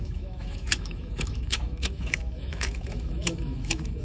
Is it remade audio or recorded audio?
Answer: remade